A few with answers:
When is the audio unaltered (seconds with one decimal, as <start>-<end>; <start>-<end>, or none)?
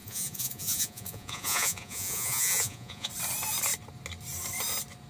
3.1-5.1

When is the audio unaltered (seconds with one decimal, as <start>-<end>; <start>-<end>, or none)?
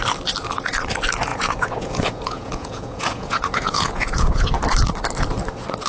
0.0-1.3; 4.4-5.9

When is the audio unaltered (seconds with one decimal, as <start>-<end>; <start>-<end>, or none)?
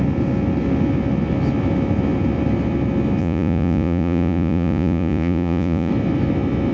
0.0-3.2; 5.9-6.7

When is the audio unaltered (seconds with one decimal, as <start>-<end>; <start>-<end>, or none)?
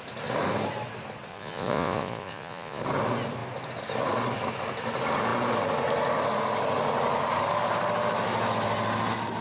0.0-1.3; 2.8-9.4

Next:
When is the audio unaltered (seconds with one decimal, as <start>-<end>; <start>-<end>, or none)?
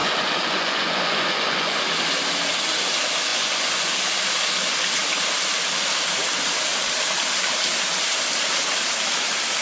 1.8-3.3; 3.9-9.6